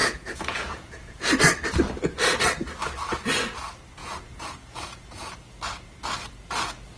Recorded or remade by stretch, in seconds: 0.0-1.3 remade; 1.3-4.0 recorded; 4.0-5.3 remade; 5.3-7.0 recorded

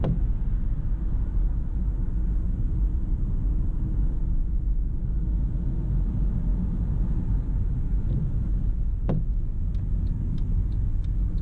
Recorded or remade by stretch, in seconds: 0.0-1.3 recorded; 1.3-5.1 remade; 5.1-11.4 recorded